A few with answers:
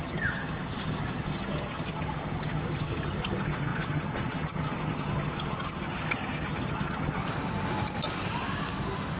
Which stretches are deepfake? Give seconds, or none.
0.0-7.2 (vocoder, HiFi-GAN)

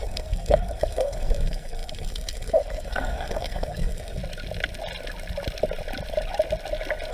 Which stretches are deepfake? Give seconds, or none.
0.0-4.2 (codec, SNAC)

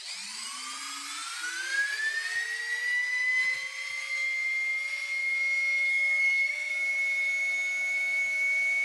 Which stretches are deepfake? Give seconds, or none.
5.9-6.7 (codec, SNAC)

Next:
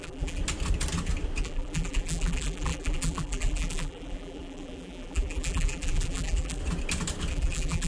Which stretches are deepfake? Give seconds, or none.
0.0-0.4 (vocoder, BigVGAN v2); 1.4-6.6; 7.3-7.9

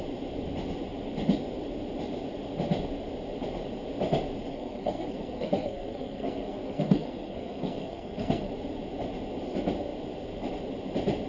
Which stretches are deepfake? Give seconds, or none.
4.5-8.5 (codec, SNAC)